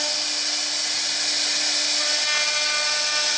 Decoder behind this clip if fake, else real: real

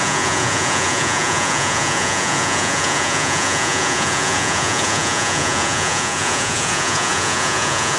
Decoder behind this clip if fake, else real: fake, vocoder, Vocos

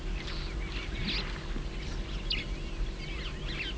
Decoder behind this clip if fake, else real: real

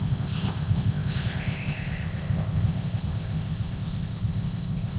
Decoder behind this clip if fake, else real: fake, codec, ZipCodec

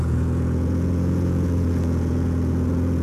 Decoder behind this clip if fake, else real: fake, vocoder, Vocos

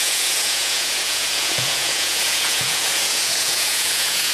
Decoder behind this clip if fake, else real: fake, vocoder, Vocos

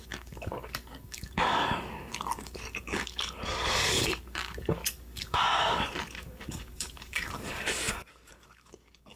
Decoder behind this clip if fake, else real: fake, codec, DAC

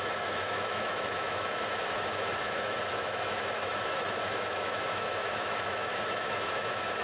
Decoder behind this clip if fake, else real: fake, autoencoder, DAC-VAE